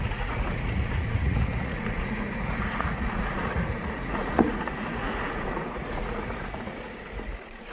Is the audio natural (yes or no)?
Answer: no